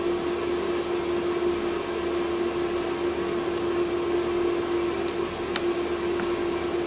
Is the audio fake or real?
real